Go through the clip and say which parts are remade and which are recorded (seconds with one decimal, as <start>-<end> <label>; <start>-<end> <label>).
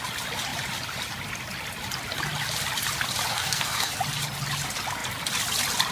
0.0-3.3 recorded; 3.3-3.9 remade; 3.9-5.9 recorded